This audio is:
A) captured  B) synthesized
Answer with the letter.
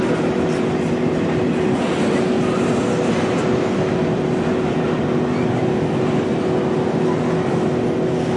A